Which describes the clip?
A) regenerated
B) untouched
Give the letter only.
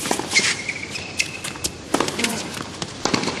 B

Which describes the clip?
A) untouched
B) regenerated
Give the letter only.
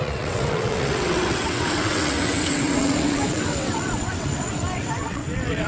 B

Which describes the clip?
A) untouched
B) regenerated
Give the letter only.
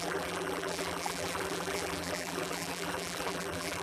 B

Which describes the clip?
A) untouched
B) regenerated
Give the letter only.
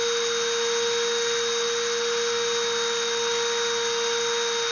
A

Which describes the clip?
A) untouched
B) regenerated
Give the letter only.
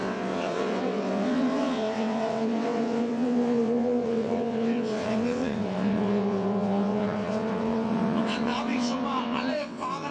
B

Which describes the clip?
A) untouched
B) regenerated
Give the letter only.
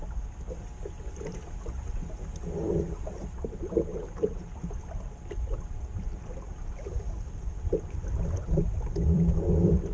B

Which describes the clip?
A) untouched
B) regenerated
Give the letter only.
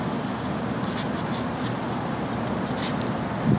A